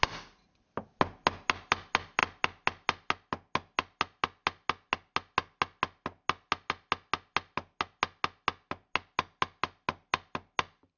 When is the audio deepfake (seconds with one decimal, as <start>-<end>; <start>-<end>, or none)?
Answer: none